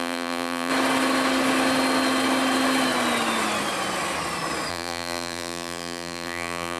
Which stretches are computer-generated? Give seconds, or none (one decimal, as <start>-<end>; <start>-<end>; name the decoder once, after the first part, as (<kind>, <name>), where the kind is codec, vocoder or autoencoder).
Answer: 0.0-0.7 (vocoder, BigVGAN v2); 4.7-6.8